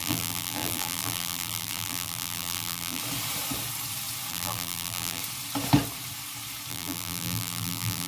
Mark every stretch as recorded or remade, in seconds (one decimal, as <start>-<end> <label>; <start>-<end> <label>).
0.0-3.0 remade; 3.0-4.3 recorded; 4.3-5.2 remade; 5.2-6.7 recorded; 6.7-8.1 remade